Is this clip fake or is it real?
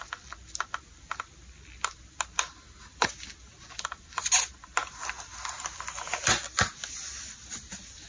real